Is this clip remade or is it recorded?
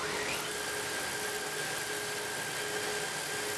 recorded